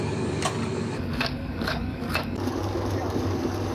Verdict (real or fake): fake